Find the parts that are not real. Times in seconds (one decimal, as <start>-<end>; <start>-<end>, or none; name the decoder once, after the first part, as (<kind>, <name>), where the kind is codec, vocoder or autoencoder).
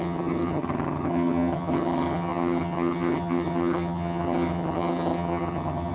0.0-5.9 (vocoder, HiFi-GAN)